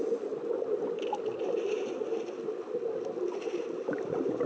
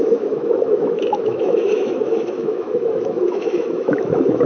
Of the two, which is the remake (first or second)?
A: second